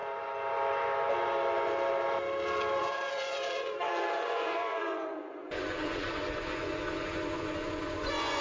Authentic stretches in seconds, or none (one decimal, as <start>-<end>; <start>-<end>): 0.0-2.8